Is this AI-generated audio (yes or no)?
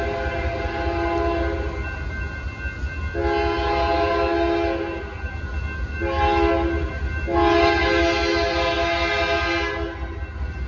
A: no